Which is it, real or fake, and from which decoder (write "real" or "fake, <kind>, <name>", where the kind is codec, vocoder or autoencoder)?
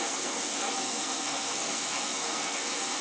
fake, codec, SNAC